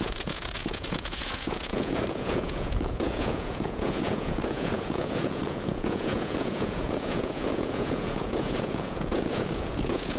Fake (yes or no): yes